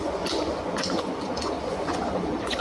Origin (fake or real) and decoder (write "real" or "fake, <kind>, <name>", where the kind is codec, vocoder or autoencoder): fake, vocoder, Vocos